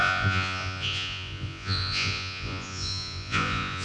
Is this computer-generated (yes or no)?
yes